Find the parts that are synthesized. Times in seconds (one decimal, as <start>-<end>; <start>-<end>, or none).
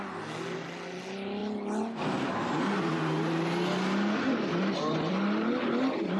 none